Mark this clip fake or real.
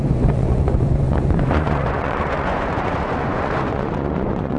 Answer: fake